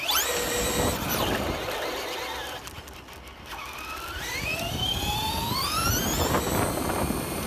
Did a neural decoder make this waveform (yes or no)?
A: no